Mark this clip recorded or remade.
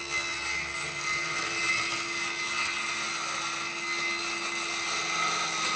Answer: recorded